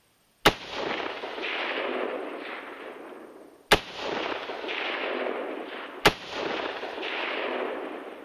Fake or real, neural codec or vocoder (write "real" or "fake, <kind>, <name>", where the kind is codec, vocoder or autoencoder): real